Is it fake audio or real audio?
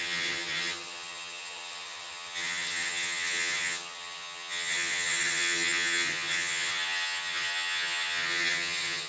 fake